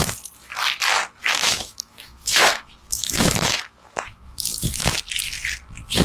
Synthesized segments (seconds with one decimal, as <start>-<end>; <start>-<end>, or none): 1.2-4.8